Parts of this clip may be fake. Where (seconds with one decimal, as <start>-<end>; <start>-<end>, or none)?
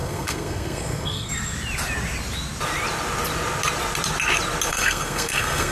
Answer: 0.0-1.3; 4.7-5.7